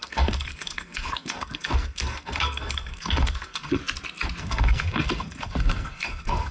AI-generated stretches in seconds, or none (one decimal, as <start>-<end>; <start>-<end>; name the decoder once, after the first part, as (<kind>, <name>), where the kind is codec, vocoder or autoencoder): 0.0-3.8 (codec, SNAC); 4.4-6.5